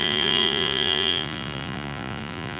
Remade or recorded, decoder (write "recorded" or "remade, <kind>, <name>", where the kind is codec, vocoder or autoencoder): remade, vocoder, Vocos